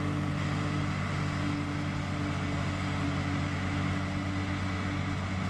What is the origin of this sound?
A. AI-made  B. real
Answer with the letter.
B